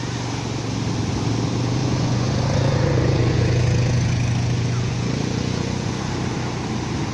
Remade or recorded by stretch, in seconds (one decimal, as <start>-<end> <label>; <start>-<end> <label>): 0.0-1.8 recorded; 1.8-6.1 remade; 6.1-7.1 recorded